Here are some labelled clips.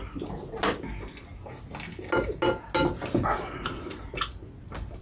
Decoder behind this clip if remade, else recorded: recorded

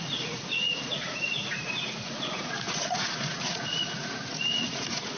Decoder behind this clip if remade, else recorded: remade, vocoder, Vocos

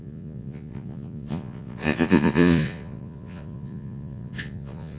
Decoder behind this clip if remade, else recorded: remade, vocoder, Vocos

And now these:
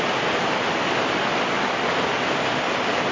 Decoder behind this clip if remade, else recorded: recorded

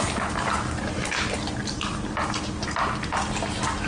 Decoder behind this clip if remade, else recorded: recorded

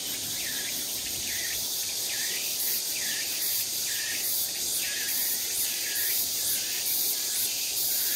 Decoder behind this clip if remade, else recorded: remade, vocoder, BigVGAN v2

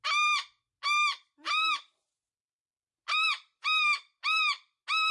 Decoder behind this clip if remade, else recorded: recorded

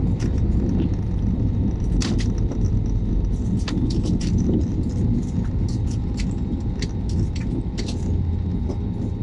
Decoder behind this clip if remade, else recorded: recorded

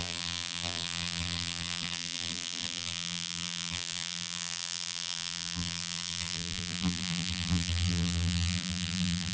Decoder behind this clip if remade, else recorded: remade, vocoder, BigVGAN v2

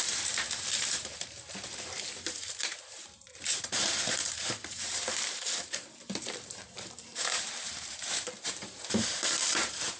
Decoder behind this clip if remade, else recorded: remade, vocoder, BigVGAN v2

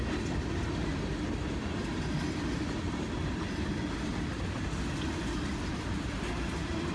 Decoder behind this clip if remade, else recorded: recorded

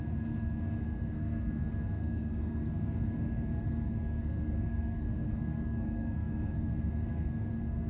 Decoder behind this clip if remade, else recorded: remade, codec, SNAC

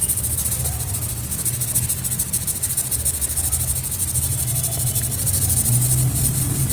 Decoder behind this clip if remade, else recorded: recorded